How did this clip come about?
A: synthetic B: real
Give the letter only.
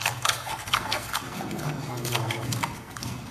A